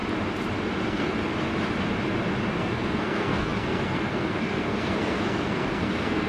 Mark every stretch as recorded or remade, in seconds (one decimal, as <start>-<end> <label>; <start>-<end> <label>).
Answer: 0.0-0.8 recorded; 0.8-1.3 remade; 1.3-2.5 recorded; 2.5-6.3 remade